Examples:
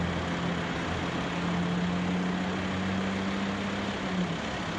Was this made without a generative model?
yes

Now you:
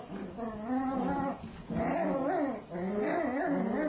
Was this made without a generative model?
yes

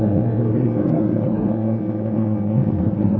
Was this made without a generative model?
no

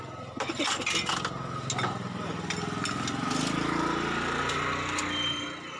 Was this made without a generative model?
yes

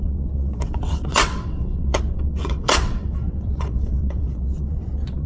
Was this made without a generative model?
no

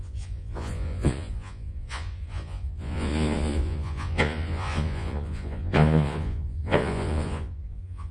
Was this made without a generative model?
no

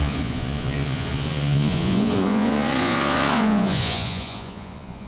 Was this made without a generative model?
no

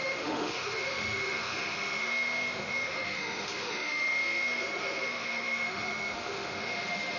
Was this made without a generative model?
no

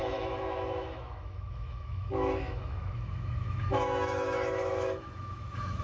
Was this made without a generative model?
no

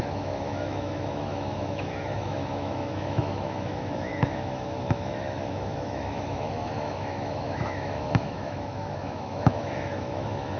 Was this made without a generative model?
no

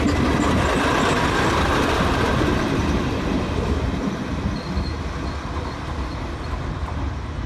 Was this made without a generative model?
yes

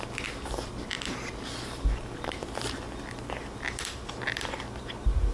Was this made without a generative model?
yes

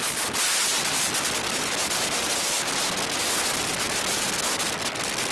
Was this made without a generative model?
yes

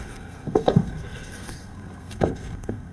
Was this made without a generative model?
no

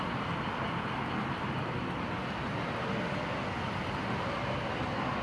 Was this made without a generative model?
yes